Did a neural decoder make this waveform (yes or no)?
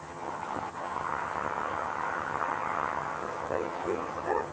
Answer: yes